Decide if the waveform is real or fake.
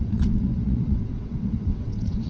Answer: fake